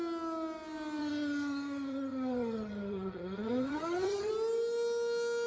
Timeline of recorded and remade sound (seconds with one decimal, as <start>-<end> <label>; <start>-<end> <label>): 0.0-1.0 recorded; 1.0-4.3 remade; 4.3-5.5 recorded